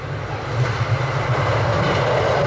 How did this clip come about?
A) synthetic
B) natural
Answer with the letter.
B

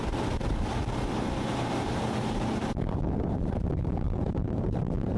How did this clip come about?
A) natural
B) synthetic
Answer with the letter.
B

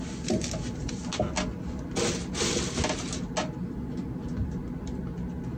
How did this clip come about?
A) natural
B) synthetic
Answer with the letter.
A